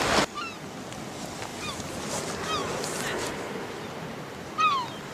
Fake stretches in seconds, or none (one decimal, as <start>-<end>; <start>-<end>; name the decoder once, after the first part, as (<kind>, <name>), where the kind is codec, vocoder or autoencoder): none